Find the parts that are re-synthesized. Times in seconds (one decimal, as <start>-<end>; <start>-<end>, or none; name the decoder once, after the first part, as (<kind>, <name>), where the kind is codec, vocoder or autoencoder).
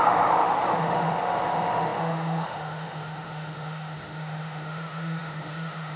0.0-6.0 (autoencoder, DAC-VAE)